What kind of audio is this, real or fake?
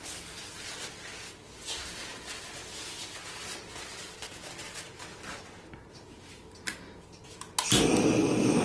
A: real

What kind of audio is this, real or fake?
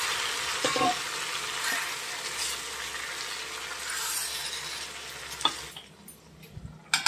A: real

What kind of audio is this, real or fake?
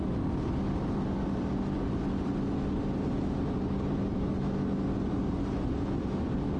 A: real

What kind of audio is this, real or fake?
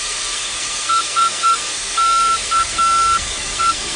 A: fake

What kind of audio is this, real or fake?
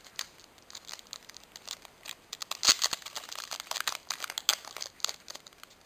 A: real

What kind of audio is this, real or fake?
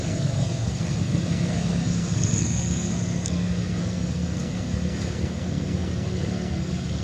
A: fake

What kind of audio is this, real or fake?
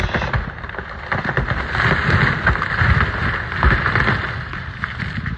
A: real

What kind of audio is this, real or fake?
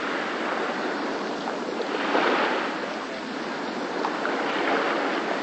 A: real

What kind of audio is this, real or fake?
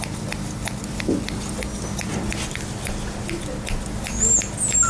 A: real